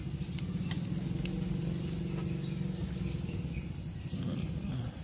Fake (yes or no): no